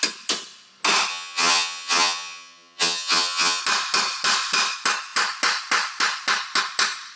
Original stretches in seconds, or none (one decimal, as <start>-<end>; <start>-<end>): 0.0-1.1; 3.6-7.2